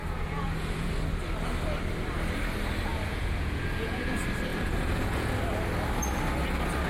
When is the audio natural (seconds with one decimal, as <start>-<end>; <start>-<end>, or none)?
0.9-2.9; 4.1-4.5; 5.3-6.9